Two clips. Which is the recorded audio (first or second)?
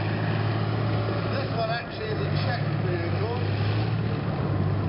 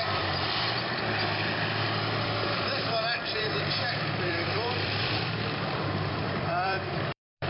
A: first